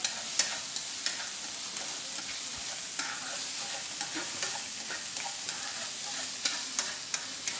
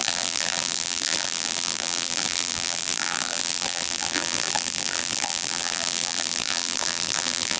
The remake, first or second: second